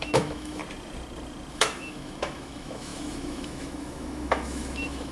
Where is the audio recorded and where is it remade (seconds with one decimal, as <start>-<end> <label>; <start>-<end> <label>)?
0.0-0.6 remade; 0.6-1.5 recorded; 1.5-5.1 remade